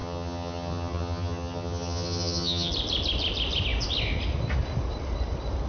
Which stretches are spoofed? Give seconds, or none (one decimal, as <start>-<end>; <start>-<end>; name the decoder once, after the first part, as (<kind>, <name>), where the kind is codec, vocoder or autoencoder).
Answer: 0.0-2.7 (vocoder, HiFi-GAN)